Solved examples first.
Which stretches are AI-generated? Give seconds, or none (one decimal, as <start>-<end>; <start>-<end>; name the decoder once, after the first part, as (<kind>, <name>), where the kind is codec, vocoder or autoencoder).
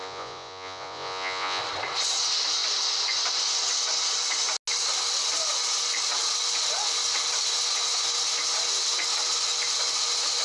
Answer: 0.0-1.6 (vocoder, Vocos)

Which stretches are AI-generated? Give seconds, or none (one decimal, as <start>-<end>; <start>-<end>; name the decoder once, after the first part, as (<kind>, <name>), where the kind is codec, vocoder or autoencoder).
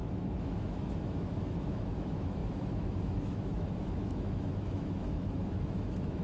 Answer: 0.0-6.2 (autoencoder, DAC-VAE)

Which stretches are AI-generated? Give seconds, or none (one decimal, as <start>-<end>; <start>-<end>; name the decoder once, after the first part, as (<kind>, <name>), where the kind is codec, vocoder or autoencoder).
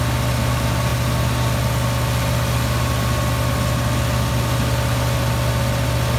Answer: none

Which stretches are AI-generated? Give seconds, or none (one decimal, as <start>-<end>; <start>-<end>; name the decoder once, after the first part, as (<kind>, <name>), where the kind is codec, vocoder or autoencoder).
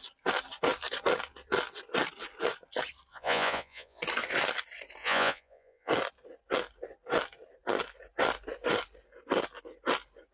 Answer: 3.1-4.0 (vocoder, Vocos); 5.0-5.9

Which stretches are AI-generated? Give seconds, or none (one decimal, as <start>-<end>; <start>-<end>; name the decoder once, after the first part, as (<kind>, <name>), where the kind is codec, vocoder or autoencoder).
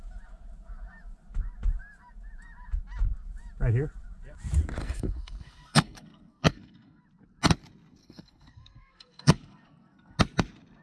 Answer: 4.8-7.0 (codec, SNAC); 8.0-10.2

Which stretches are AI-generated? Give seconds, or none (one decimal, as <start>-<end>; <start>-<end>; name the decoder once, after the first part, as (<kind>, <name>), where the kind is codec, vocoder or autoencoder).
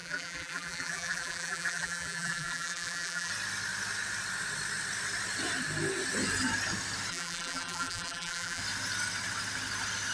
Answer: 0.0-3.3 (vocoder, BigVGAN v2); 7.1-8.6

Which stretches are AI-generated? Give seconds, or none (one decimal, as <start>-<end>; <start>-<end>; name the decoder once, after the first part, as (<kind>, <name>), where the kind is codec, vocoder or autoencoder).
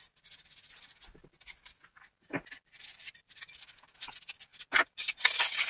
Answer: none